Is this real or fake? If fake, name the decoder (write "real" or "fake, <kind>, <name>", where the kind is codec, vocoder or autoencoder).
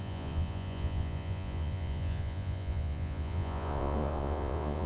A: fake, vocoder, Vocos